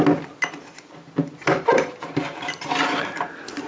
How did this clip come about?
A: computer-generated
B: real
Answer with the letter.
B